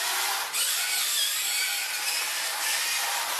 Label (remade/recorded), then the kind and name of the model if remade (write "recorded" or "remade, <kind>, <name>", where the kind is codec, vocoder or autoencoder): recorded